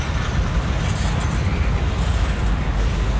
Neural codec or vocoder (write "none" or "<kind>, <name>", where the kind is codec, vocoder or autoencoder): none